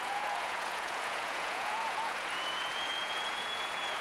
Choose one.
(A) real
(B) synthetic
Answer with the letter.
B